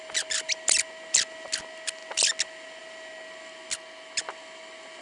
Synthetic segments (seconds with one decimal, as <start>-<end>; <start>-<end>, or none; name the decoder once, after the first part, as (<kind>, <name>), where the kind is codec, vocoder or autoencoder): none